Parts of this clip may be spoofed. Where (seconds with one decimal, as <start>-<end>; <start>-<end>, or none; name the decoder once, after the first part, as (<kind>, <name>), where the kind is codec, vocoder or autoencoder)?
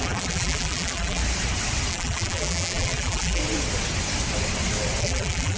0.0-1.2 (vocoder, BigVGAN v2); 1.9-3.4; 5.0-5.6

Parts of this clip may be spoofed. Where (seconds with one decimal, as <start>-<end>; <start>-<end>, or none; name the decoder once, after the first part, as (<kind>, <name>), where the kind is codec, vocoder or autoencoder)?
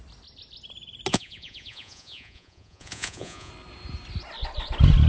1.1-3.5 (vocoder, Vocos)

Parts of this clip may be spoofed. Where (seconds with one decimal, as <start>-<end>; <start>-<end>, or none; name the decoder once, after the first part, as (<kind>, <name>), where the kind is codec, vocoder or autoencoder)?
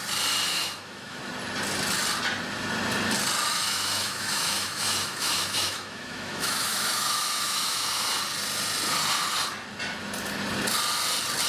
0.5-1.2 (autoencoder, DAC-VAE); 3.5-8.1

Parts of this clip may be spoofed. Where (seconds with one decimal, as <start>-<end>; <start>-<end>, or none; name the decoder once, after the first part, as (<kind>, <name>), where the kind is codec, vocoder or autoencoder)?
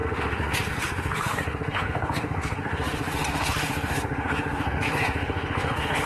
0.0-6.1 (autoencoder, DAC-VAE)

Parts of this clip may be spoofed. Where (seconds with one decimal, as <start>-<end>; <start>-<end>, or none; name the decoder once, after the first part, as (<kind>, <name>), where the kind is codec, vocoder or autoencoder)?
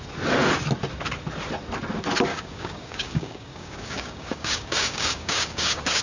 2.3-6.0 (codec, DAC)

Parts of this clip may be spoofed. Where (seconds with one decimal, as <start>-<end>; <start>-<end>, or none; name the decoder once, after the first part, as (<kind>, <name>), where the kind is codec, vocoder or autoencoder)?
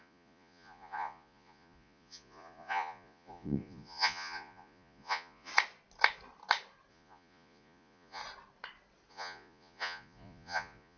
0.0-5.5 (vocoder, Vocos); 6.9-8.2; 9.1-11.0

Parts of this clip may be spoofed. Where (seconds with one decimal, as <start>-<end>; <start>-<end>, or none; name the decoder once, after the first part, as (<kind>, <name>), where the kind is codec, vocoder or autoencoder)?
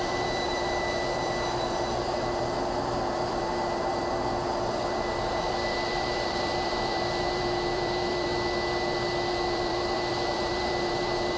0.0-8.3 (vocoder, BigVGAN v2); 9.3-11.4